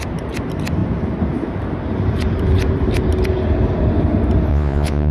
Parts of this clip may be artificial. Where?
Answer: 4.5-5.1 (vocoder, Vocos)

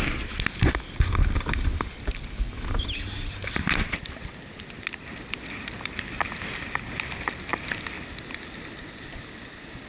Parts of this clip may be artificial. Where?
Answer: none

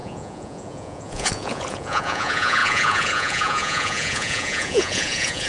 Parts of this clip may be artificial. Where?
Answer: 0.0-5.5 (vocoder, Vocos)

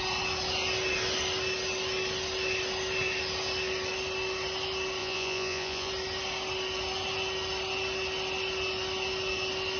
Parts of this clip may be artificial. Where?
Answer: 5.0-5.9 (vocoder, Vocos)

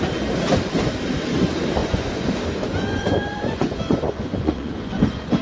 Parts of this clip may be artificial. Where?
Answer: 1.8-2.3 (vocoder, Vocos); 2.7-5.4